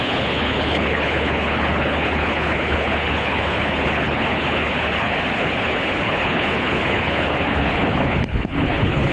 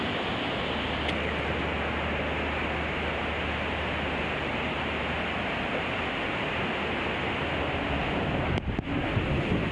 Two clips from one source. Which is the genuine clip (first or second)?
second